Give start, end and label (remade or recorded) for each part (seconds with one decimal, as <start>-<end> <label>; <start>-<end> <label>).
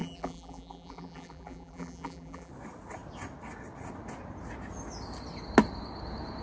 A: 0.0-2.5 remade; 2.5-6.4 recorded